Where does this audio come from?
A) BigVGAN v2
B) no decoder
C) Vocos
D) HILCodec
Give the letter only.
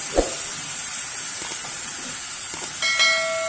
B